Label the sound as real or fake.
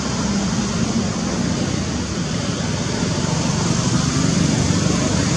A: real